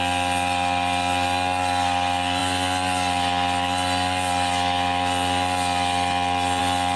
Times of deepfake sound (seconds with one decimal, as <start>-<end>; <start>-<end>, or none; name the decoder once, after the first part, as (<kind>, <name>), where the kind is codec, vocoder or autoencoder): none